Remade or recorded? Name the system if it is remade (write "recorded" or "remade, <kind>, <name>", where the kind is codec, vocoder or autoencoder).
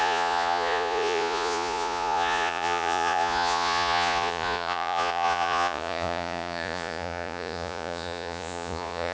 remade, vocoder, Vocos